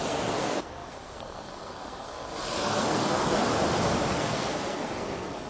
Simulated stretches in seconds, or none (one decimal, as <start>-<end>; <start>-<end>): 0.0-3.5; 4.1-5.5